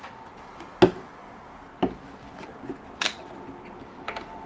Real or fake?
real